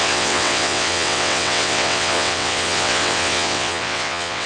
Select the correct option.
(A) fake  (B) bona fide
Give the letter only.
A